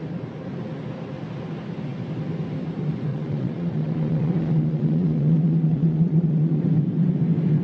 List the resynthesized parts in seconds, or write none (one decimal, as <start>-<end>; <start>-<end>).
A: 3.1-6.6